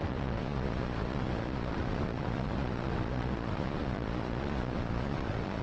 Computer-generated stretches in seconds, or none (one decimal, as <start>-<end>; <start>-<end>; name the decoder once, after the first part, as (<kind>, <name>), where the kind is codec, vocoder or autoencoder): 0.0-5.6 (vocoder, Vocos)